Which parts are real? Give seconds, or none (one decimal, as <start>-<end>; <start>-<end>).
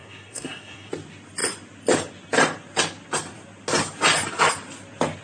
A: 0.9-5.2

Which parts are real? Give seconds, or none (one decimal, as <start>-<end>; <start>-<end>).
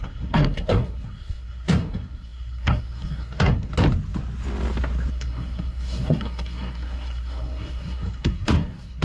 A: 3.7-5.1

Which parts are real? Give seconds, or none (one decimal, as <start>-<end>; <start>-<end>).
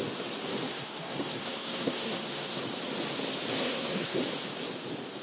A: 0.0-0.7; 2.6-3.6; 4.2-5.2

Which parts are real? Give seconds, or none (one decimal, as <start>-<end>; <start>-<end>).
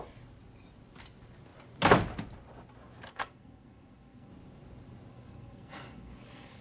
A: 0.0-3.1; 4.3-5.1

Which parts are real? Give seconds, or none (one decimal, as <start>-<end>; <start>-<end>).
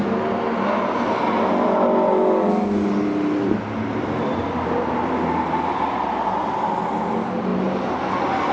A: 0.0-8.5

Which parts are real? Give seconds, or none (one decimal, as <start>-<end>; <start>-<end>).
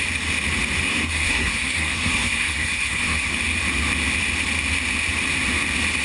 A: 0.0-0.9; 3.3-6.0